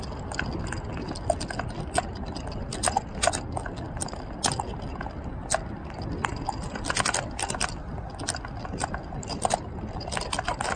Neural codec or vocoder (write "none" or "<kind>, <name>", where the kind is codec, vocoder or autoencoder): none